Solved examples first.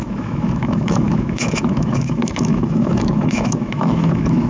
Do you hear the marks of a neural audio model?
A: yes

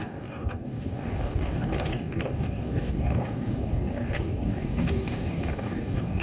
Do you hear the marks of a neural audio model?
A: yes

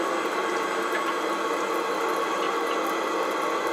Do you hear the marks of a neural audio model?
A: no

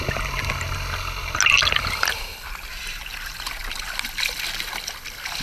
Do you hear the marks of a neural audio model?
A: no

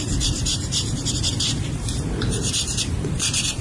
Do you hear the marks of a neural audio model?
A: yes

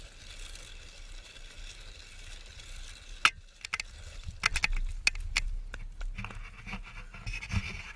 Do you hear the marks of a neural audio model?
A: no